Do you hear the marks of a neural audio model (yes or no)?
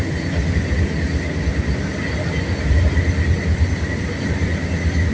no